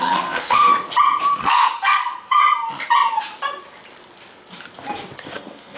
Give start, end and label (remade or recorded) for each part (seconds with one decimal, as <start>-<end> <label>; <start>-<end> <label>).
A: 0.0-0.7 remade; 0.7-1.4 recorded; 1.4-2.4 remade; 2.4-5.2 recorded; 5.2-5.8 remade